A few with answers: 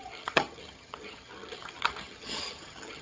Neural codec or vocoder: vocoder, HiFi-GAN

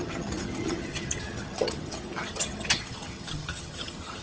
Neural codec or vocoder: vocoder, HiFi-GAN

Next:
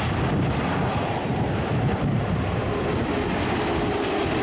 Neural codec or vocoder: none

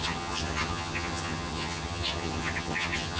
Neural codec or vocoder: vocoder, HiFi-GAN